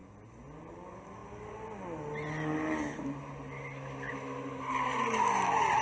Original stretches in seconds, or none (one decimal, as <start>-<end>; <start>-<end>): 0.0-5.8